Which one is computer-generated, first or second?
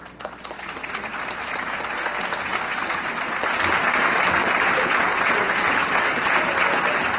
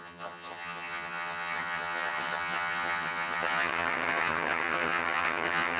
second